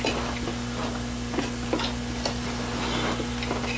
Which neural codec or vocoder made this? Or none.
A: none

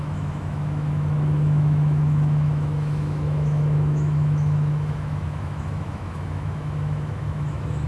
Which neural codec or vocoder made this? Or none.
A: autoencoder, DAC-VAE